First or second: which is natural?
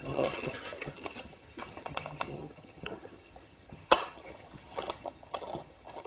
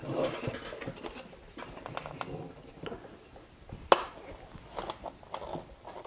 second